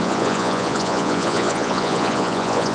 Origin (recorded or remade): remade